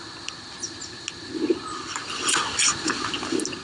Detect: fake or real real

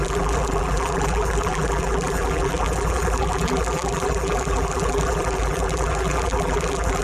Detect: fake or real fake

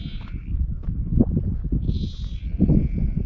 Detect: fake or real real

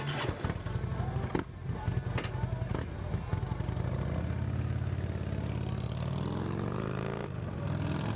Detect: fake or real real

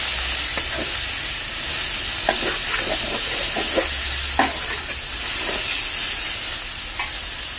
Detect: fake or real real